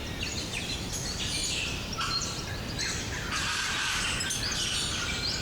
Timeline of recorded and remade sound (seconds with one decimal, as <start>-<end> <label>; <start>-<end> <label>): 0.0-0.9 remade; 0.9-1.4 recorded; 1.4-4.4 remade; 4.4-5.4 recorded